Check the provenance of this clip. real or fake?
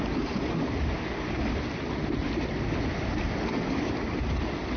real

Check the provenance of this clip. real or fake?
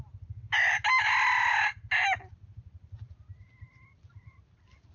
real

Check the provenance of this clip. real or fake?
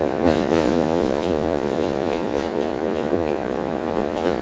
fake